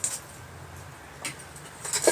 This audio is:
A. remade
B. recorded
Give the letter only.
B